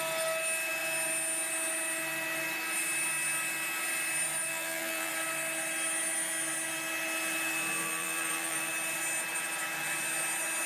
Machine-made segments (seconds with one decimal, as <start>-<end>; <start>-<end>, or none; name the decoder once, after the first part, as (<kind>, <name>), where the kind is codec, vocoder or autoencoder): 4.5-5.1 (vocoder, BigVGAN v2); 7.8-8.7

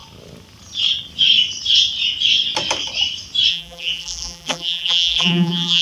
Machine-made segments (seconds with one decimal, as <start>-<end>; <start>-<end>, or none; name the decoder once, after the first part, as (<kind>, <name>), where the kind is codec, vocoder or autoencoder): 3.5-5.8 (vocoder, BigVGAN v2)

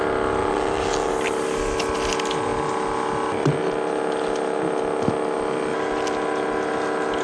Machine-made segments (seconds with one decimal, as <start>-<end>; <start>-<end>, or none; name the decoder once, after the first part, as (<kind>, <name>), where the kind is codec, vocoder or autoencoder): 0.4-1.1 (vocoder, BigVGAN v2)

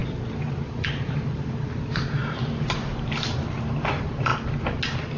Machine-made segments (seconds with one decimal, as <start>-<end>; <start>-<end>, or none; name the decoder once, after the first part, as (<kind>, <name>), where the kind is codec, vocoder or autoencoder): 0.6-2.2 (vocoder, BigVGAN v2); 2.8-4.3

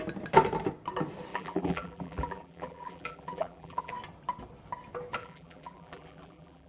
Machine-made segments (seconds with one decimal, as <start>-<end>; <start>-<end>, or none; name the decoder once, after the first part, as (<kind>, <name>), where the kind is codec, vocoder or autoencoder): 1.3-3.9 (vocoder, BigVGAN v2); 5.2-6.7

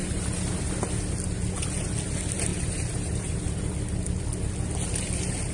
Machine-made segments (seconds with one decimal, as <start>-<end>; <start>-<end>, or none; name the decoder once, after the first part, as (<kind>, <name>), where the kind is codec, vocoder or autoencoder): 0.0-0.7 (vocoder, BigVGAN v2); 2.5-3.7

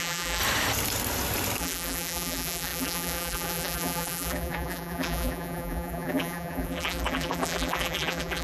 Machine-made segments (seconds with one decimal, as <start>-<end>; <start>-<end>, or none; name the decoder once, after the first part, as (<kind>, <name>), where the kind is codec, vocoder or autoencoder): 0.0-0.4 (vocoder, BigVGAN v2); 1.6-8.4